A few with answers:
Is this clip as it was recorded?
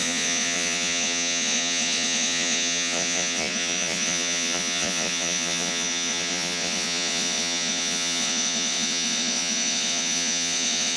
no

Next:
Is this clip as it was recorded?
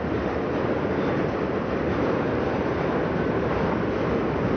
yes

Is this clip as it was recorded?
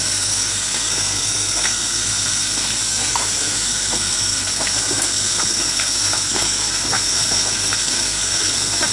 no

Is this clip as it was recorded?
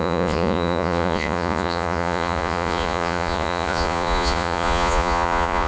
no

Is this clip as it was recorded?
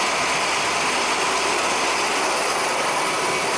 yes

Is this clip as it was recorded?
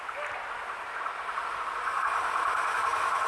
yes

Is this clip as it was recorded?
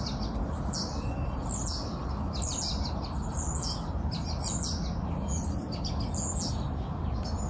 yes